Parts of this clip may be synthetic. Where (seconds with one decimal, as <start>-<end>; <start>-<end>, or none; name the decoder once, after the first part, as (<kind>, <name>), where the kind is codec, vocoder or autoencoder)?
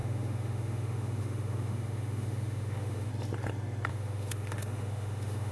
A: 0.0-3.1 (autoencoder, DAC-VAE); 3.9-5.5